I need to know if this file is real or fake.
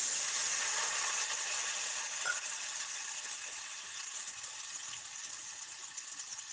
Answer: fake